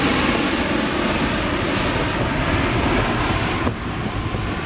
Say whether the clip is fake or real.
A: real